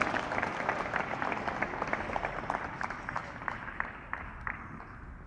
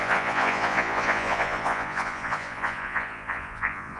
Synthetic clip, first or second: second